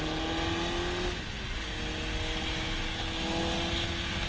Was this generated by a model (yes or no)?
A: no